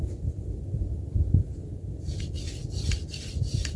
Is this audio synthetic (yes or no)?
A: no